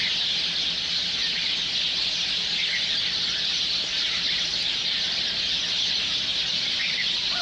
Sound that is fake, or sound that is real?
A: real